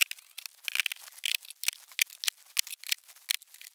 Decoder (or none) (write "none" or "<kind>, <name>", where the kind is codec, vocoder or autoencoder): none